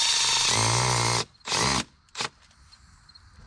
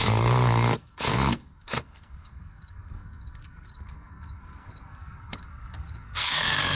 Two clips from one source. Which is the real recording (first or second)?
first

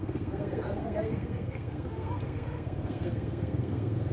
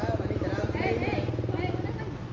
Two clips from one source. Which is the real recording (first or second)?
second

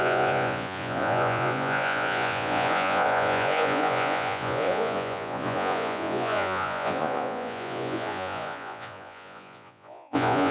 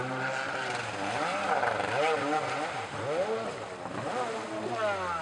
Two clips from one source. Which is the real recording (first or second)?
second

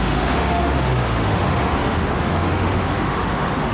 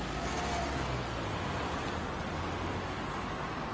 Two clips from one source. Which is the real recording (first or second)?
second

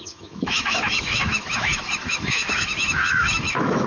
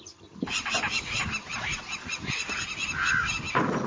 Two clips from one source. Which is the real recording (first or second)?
second